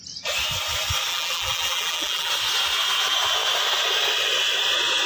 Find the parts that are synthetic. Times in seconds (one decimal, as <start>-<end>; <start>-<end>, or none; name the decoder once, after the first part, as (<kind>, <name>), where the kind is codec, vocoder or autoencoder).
1.1-2.3 (vocoder, BigVGAN v2)